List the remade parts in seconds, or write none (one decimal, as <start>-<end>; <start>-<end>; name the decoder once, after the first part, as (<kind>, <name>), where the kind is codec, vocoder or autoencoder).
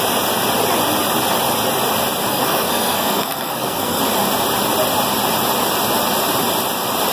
2.3-4.0 (codec, SNAC)